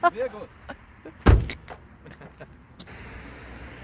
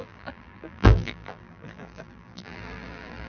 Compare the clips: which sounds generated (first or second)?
second